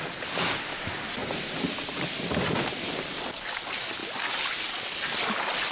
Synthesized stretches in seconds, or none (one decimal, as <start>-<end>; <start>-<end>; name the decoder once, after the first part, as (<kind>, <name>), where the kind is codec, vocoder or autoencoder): none